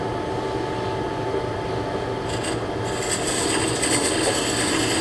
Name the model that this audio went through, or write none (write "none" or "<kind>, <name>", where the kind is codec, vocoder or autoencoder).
none